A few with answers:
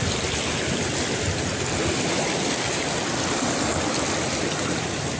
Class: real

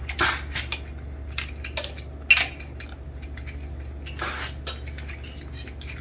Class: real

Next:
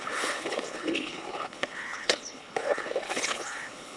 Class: fake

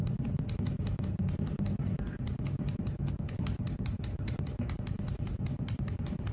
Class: real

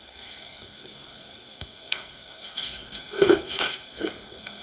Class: fake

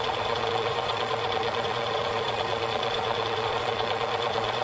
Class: fake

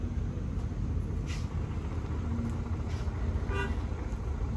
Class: real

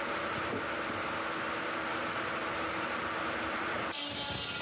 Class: real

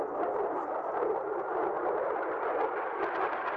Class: real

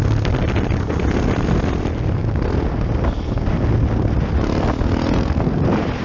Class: real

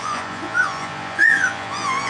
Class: fake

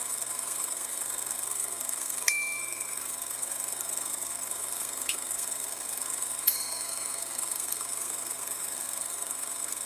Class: fake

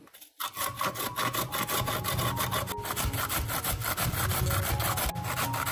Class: real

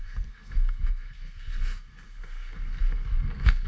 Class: fake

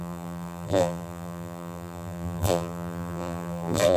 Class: fake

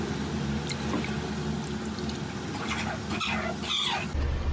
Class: real